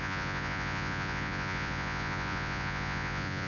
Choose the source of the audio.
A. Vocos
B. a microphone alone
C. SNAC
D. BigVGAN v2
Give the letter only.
A